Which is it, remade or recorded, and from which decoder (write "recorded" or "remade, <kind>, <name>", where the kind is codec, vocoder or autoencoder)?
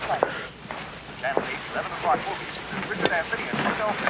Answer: recorded